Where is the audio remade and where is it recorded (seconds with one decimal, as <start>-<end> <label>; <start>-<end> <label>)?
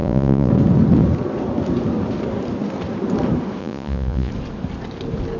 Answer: 0.0-0.5 remade; 0.5-3.6 recorded; 3.6-4.3 remade; 4.3-5.4 recorded